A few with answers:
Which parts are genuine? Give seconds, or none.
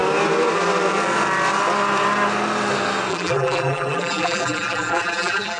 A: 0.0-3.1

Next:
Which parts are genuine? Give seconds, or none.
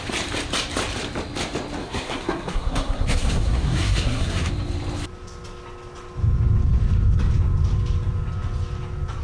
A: 0.0-1.8; 4.5-9.2